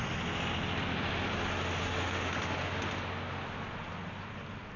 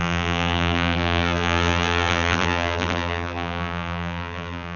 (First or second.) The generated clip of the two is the second